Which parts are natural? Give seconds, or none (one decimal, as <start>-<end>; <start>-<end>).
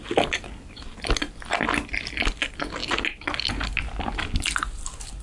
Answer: 0.0-5.2